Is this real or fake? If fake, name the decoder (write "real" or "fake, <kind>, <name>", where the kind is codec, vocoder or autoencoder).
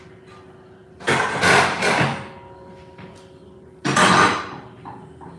real